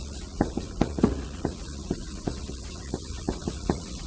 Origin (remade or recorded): remade